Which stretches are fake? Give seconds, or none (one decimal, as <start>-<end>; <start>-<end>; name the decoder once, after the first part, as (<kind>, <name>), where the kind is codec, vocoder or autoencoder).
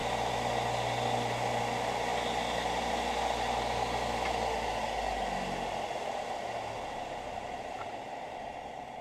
none